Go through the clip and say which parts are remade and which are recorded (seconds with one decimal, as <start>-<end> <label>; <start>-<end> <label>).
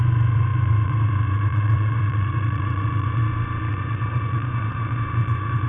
0.0-3.2 remade; 3.2-3.7 recorded; 3.7-5.7 remade